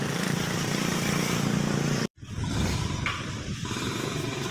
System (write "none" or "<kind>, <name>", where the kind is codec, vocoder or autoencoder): vocoder, BigVGAN v2